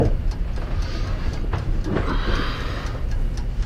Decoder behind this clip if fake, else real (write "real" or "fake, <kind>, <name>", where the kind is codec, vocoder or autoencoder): real